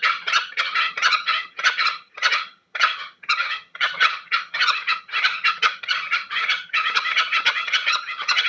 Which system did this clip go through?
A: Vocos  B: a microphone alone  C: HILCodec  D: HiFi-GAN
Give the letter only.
D